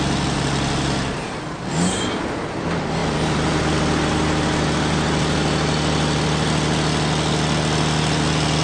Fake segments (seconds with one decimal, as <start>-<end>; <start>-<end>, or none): none